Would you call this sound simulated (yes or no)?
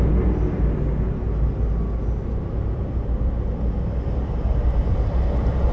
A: no